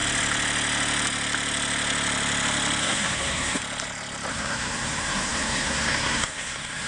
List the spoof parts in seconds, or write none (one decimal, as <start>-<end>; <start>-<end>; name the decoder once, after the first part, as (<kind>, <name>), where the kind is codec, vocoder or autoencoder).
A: 2.8-3.6 (codec, SNAC); 4.3-6.9